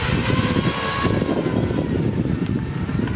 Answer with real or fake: real